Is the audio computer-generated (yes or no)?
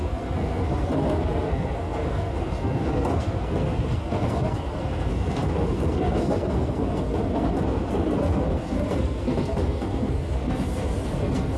yes